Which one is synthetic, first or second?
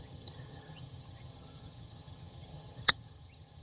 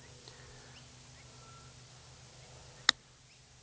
first